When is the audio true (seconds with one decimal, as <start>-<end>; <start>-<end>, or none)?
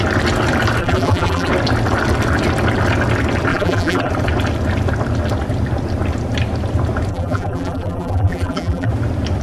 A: 0.0-0.8; 1.5-3.5; 4.1-7.1; 8.9-9.4